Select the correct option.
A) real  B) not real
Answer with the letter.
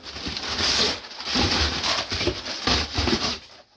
A